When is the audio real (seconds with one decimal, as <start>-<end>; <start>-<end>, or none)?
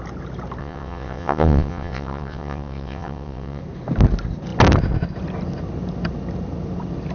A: 0.0-0.6; 3.6-7.1